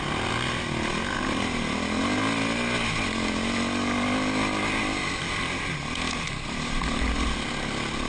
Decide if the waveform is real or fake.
real